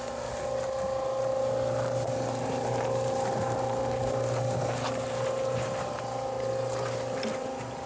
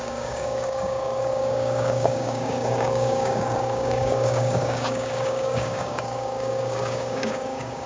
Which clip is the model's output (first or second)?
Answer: second